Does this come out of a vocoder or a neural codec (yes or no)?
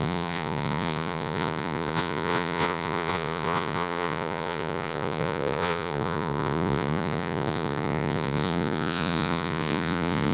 yes